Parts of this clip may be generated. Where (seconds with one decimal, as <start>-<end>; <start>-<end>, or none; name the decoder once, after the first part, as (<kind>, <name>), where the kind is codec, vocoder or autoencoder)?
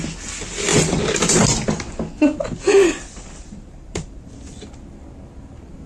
0.7-1.4 (vocoder, BigVGAN v2); 2.8-4.3